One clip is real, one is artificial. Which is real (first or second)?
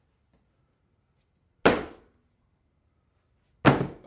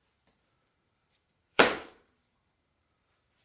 first